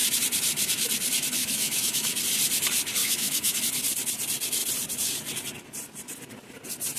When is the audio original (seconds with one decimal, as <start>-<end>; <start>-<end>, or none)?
0.0-1.4; 2.2-3.0; 3.6-7.0